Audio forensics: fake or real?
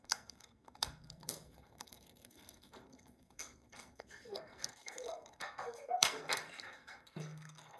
fake